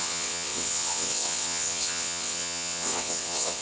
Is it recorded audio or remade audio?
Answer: remade